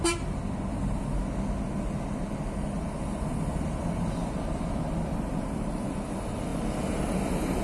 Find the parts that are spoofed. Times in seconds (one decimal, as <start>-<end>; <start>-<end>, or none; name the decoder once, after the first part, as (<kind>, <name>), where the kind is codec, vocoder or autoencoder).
none